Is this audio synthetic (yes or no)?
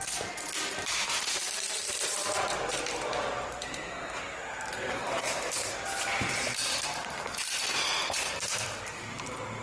yes